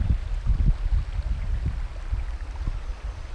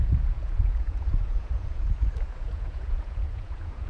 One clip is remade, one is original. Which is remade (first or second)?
second